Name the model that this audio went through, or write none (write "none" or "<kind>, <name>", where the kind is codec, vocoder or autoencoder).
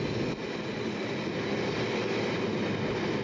none